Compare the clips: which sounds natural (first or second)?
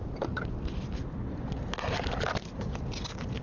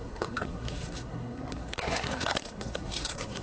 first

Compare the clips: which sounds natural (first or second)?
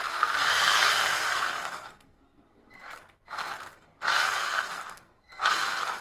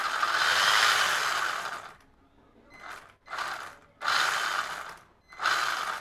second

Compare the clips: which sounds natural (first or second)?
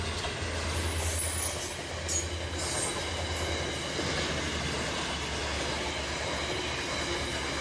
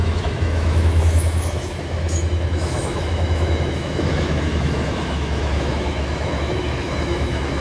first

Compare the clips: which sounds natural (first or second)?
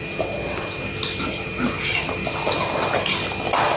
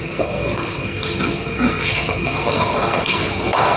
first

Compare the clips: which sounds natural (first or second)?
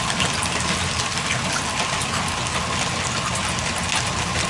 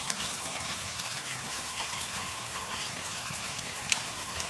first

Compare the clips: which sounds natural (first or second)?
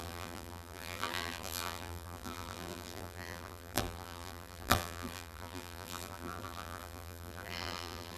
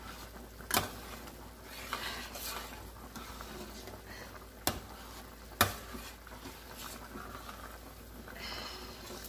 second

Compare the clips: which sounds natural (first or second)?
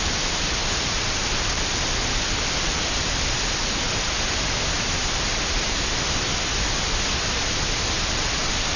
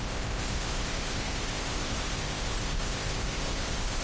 first